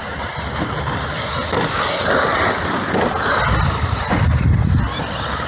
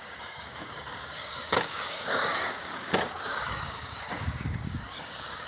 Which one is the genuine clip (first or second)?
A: first